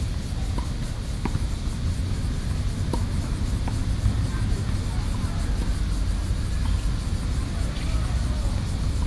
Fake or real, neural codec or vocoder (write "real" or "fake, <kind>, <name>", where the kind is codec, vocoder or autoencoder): real